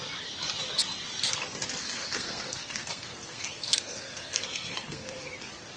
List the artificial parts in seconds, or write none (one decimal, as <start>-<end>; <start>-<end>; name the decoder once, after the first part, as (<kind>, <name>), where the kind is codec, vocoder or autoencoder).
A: 1.8-5.3 (codec, SNAC)